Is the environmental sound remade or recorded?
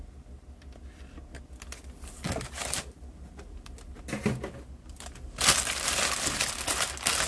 recorded